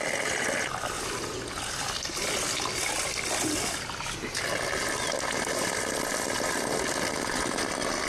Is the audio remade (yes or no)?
no